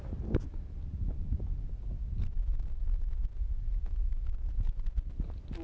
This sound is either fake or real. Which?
real